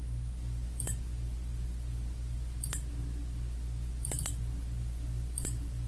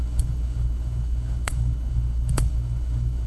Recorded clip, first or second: first